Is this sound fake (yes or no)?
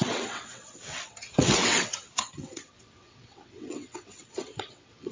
yes